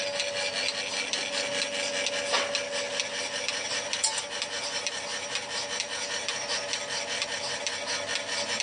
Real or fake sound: real